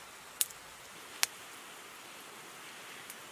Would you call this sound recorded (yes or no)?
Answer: yes